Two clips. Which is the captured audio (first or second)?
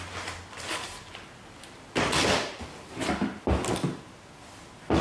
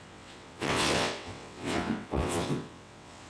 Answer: first